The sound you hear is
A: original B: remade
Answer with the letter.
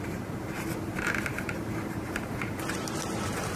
B